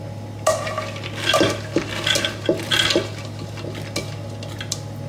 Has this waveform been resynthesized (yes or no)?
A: no